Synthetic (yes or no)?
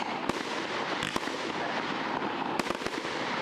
no